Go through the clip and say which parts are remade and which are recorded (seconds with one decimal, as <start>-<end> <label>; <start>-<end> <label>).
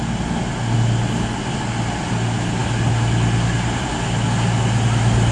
0.0-5.3 recorded